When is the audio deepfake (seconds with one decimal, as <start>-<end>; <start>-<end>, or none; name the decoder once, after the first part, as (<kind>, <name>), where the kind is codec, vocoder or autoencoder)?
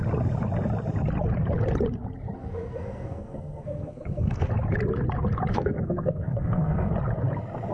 2.4-4.5 (codec, SNAC); 5.5-6.9